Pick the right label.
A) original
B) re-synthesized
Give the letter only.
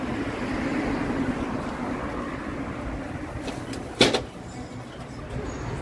A